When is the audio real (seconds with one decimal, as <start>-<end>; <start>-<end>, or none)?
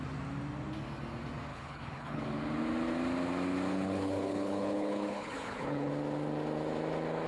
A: 0.0-1.5; 2.2-3.7; 5.9-7.3